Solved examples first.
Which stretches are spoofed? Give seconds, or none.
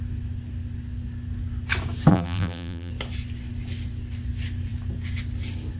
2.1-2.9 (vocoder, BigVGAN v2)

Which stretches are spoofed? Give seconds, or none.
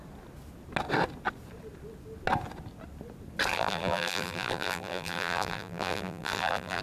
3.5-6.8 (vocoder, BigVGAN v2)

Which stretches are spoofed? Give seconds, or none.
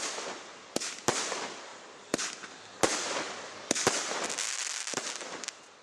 2.9-4.9 (vocoder, BigVGAN v2)